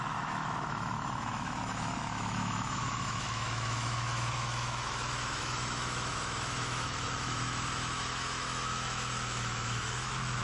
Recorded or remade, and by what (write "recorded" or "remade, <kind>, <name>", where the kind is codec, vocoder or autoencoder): remade, autoencoder, DAC-VAE